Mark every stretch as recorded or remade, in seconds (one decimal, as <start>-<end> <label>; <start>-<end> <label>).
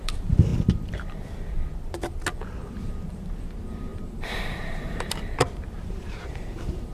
0.0-0.5 remade; 0.5-2.7 recorded; 2.7-6.9 remade